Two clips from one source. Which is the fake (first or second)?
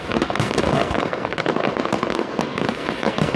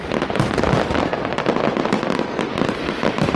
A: first